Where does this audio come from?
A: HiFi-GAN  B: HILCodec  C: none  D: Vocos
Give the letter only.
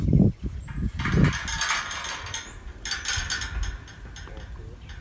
C